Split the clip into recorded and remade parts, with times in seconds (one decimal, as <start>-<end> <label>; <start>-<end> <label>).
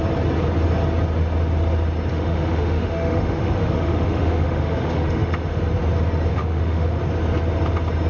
0.0-2.1 recorded; 2.1-5.6 remade; 5.6-6.3 recorded; 6.3-7.0 remade; 7.0-8.1 recorded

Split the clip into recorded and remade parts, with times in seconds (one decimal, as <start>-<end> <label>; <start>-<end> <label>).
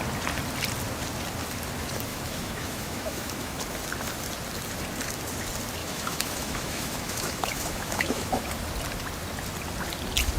0.0-2.1 recorded; 2.1-3.6 remade; 3.6-5.8 recorded; 5.8-8.5 remade; 8.5-10.4 recorded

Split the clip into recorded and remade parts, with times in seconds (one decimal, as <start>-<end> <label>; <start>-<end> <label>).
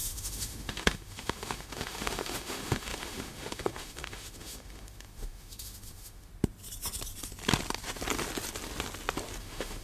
0.0-6.3 remade; 6.3-9.4 recorded; 9.4-9.8 remade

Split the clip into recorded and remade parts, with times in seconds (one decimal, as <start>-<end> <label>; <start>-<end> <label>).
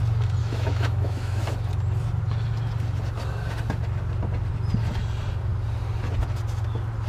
0.0-0.4 recorded; 0.4-1.4 remade; 1.4-7.1 recorded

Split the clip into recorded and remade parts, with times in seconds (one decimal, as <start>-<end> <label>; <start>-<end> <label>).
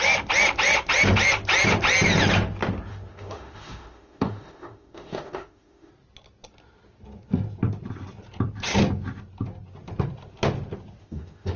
0.0-2.9 recorded; 2.9-5.9 remade; 5.9-11.0 recorded; 11.0-11.6 remade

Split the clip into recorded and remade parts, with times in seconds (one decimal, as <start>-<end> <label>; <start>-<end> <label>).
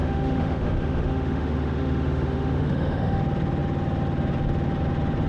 0.0-3.2 remade; 3.2-5.3 recorded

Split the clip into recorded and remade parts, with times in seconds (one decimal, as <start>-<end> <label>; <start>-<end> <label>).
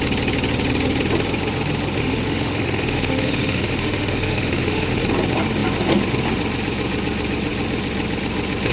0.0-2.0 recorded; 2.0-5.0 remade; 5.0-8.7 recorded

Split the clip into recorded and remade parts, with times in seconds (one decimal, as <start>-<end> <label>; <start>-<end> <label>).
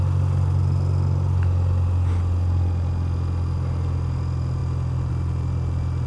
0.0-6.1 recorded